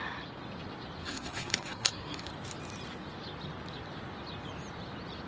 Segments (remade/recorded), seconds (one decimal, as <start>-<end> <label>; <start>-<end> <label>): 0.0-1.0 recorded; 1.0-2.3 remade; 2.3-5.3 recorded